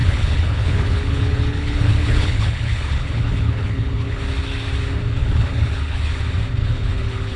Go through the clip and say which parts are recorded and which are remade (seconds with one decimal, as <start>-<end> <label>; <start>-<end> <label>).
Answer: 0.0-4.2 remade; 4.2-5.2 recorded; 5.2-6.1 remade; 6.1-6.6 recorded; 6.6-7.4 remade